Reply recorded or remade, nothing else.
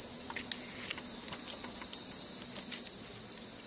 recorded